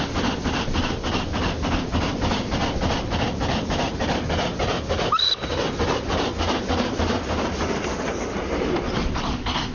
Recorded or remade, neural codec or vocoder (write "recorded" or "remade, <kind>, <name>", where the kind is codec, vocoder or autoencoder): recorded